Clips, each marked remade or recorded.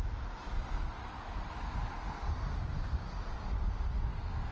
recorded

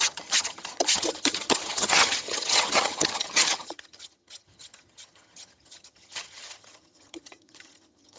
remade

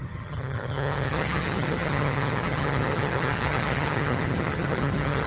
remade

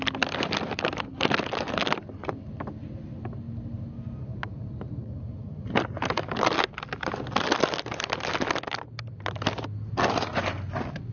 recorded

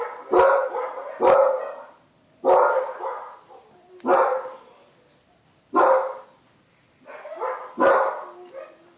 recorded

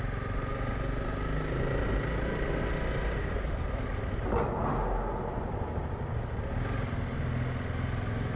recorded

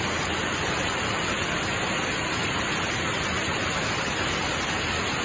recorded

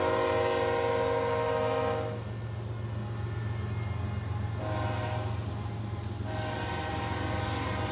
recorded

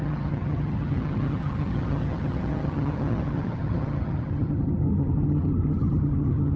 remade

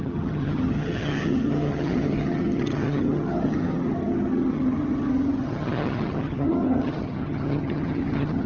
remade